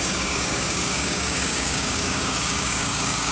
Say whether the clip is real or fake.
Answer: fake